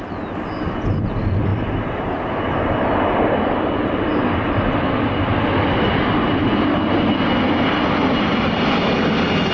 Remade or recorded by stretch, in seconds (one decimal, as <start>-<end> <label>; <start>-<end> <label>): 0.0-9.5 recorded